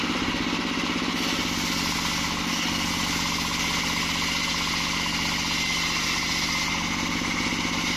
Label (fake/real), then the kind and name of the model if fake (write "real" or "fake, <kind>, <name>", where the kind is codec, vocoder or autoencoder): real